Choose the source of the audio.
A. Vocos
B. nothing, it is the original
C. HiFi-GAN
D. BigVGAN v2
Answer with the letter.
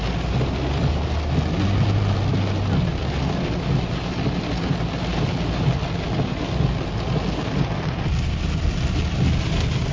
B